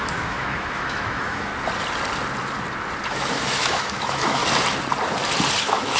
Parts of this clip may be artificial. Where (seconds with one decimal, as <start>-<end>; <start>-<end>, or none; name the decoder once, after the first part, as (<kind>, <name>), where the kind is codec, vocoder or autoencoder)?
0.0-1.5 (autoencoder, DAC-VAE); 3.1-4.4; 5.6-6.0